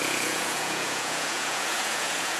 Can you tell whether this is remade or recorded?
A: remade